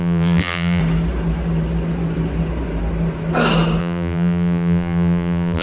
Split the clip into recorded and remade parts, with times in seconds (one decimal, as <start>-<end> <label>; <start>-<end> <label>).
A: 0.0-0.8 remade; 0.8-3.8 recorded; 3.8-5.6 remade